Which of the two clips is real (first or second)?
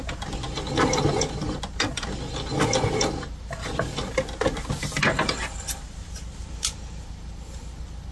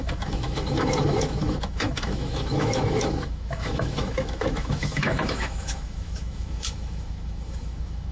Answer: first